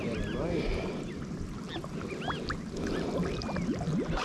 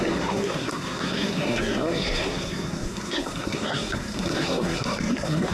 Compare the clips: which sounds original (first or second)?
first